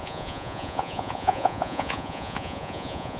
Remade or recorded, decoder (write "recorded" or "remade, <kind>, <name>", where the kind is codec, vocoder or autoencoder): remade, vocoder, Vocos